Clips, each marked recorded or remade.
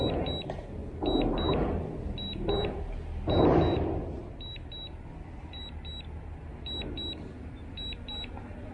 recorded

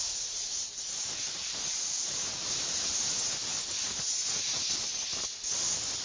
recorded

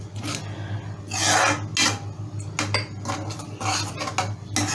recorded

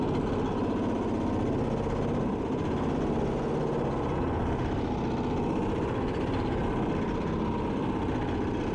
recorded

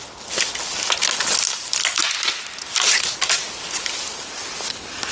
recorded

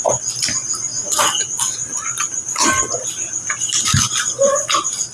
recorded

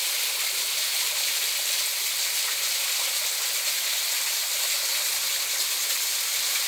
recorded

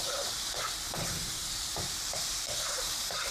remade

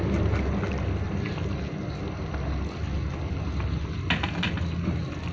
recorded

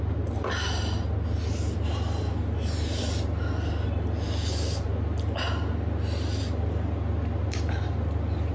recorded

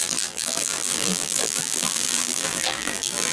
remade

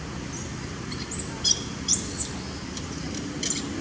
recorded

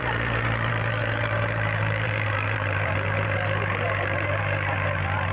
remade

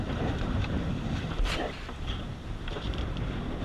remade